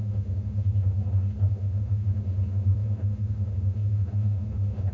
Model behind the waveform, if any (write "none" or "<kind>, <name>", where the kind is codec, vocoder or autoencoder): autoencoder, DAC-VAE